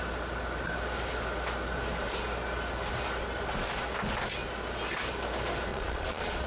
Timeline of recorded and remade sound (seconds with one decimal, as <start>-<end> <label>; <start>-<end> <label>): 0.0-5.7 recorded; 5.7-6.5 remade